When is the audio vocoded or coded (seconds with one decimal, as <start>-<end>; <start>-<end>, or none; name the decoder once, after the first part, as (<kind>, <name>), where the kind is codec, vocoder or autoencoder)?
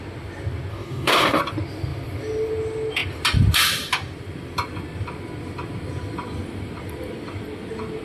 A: 0.7-1.4 (codec, DAC)